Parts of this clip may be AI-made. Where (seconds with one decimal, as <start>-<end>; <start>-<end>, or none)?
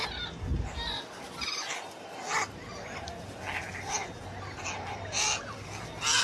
none